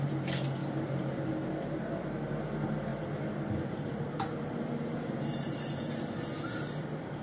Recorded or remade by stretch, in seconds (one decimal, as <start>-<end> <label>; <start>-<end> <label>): 0.0-0.6 recorded; 0.6-1.3 remade; 1.3-2.9 recorded; 2.9-5.9 remade; 5.9-7.2 recorded